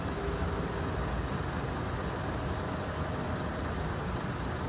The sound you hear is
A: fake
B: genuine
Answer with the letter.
B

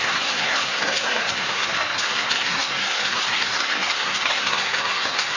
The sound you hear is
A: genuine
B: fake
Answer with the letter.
B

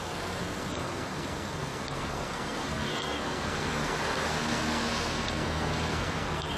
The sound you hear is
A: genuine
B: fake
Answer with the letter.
B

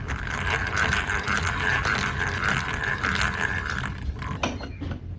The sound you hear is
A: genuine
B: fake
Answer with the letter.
A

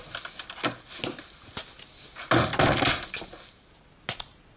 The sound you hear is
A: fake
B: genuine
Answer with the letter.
B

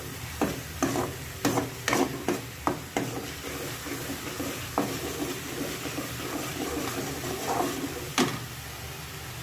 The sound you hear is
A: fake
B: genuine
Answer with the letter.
B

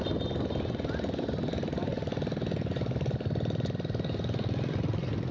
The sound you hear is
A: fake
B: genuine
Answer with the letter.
B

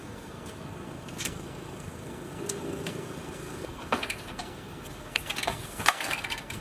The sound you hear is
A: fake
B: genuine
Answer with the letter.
A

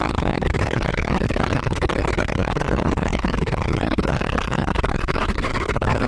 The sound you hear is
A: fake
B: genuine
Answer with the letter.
A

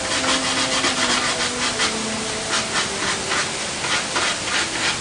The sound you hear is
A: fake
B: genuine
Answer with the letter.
B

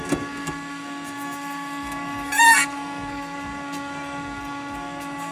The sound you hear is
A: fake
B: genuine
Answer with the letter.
A